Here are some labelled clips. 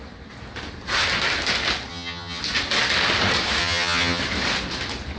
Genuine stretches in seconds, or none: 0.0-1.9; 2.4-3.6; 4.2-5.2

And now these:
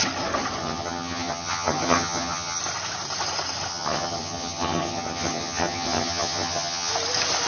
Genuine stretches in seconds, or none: 0.0-0.6; 2.6-3.7; 6.9-7.5

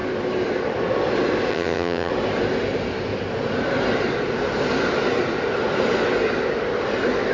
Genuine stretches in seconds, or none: 0.0-1.5; 2.1-7.3

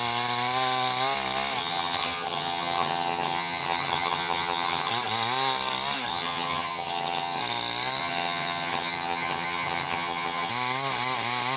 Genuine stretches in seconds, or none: 0.0-1.6; 4.9-6.1; 7.4-8.0; 10.5-11.6

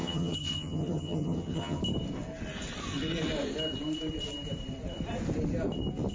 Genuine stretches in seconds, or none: 1.8-6.1

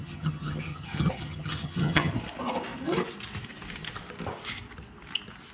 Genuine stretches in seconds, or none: 2.1-5.5

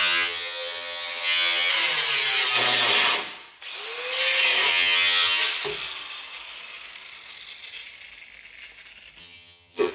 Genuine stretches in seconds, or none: 1.7-4.7; 5.4-9.2